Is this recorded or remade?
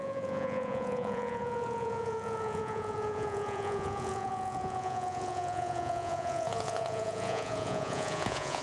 remade